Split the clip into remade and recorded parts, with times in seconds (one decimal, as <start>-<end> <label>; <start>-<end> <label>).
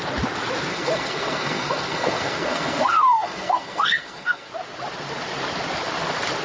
0.0-0.7 recorded; 0.7-4.5 remade; 4.5-6.4 recorded